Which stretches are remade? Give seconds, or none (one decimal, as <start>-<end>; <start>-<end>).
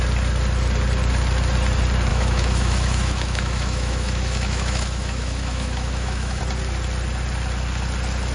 2.1-6.4